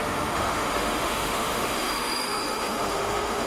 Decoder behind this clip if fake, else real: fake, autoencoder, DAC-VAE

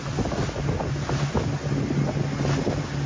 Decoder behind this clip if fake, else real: real